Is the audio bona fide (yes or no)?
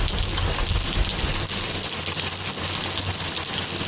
yes